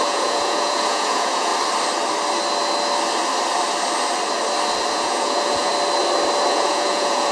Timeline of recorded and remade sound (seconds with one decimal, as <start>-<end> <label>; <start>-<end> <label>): 0.0-1.5 remade; 1.5-4.9 recorded; 4.9-5.7 remade; 5.7-6.5 recorded; 6.5-7.3 remade